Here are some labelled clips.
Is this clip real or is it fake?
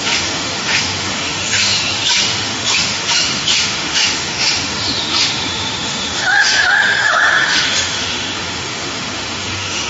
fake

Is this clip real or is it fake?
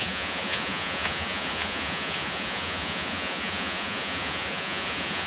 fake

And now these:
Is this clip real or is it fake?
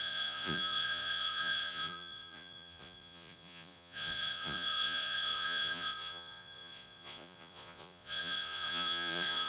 fake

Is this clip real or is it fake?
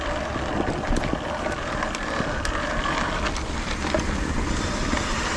real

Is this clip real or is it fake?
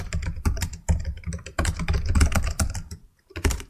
real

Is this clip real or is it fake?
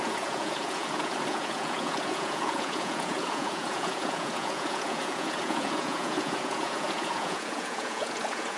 fake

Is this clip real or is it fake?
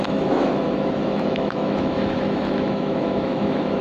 fake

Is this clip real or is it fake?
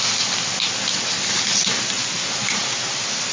real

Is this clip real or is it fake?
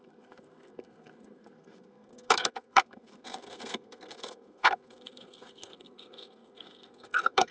fake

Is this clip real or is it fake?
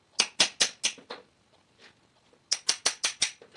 real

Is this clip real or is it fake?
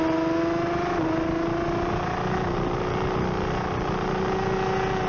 real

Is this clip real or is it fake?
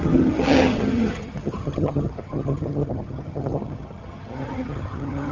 fake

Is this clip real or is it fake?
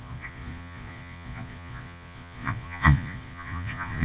fake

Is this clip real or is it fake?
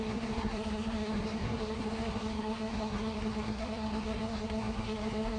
fake